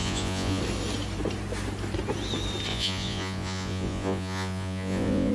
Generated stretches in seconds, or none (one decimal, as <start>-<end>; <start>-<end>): 0.0-0.6; 2.7-5.3